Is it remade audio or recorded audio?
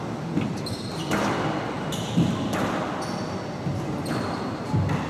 recorded